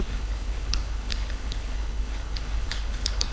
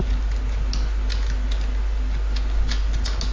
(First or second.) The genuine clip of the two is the second